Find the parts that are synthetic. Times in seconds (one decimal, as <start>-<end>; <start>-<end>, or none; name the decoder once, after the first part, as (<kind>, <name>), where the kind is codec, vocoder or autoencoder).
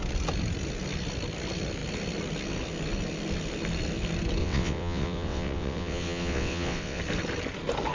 4.4-7.0 (vocoder, WaveNeXt)